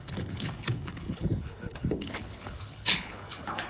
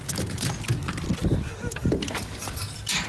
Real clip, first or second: second